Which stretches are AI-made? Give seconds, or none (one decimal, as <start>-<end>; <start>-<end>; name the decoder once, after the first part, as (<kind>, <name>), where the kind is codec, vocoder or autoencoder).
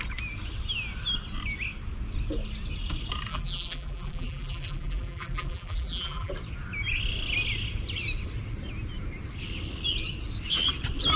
3.3-6.3 (vocoder, BigVGAN v2)